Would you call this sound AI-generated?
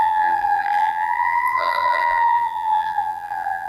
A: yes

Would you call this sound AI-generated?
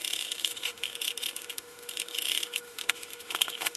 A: yes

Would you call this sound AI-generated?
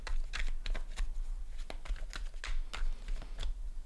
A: no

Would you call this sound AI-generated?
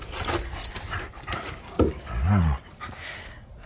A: no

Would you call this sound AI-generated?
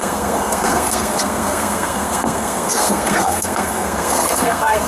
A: yes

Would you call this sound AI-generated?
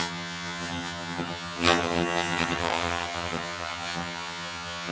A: yes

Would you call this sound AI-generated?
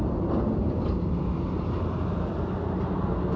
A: no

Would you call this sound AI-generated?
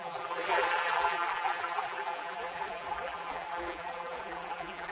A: yes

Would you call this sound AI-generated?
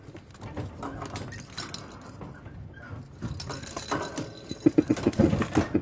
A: no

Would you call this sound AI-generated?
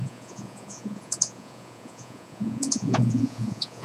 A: yes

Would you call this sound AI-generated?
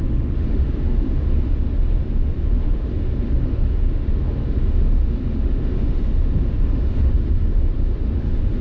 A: yes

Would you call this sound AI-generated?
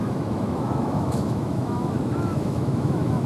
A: yes